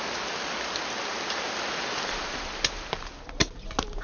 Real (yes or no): yes